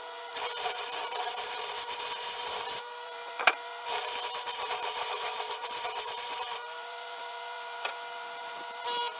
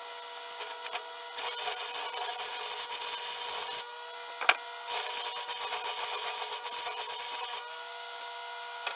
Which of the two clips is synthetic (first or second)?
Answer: first